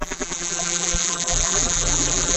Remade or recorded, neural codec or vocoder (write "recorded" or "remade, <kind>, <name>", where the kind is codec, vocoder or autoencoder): remade, vocoder, BigVGAN v2